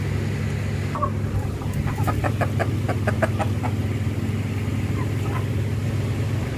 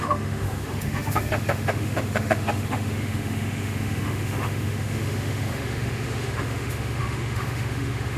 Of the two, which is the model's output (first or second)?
second